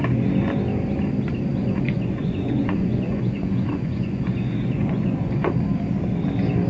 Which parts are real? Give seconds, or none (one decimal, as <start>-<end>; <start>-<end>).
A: 0.0-1.6; 5.5-6.7